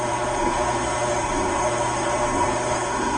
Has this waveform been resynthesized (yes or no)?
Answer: yes